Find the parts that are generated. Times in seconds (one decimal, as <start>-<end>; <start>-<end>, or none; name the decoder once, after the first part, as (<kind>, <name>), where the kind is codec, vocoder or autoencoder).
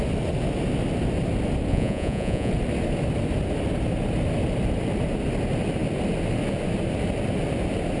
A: 1.7-2.5 (vocoder, Vocos)